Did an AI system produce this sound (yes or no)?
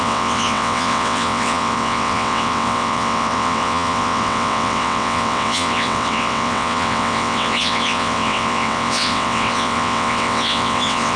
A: yes